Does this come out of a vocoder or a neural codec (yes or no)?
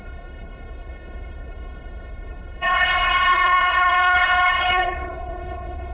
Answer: yes